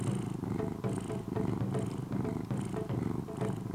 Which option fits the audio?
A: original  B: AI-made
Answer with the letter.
A